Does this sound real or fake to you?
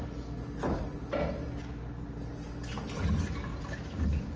real